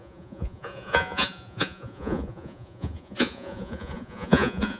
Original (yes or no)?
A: no